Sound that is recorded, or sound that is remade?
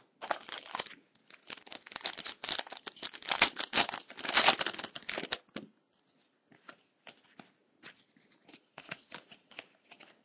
recorded